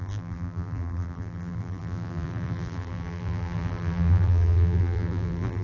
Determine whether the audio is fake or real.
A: fake